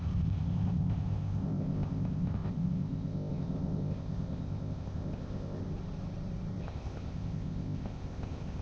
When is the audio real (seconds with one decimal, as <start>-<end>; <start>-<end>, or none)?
5.6-6.6